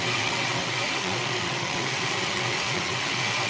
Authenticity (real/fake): fake